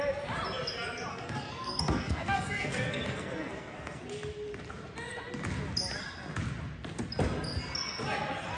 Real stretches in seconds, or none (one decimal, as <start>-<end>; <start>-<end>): 0.0-1.1; 4.0-8.6